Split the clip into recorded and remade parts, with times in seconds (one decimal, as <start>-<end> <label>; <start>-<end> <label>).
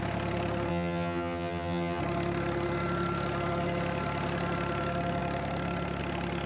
0.0-0.7 recorded; 0.7-2.0 remade; 2.0-6.5 recorded